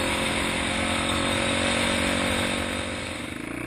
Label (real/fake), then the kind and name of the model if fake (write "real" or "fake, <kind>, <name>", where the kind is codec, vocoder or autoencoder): real